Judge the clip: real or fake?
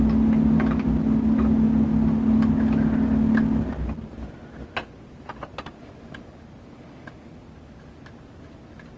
real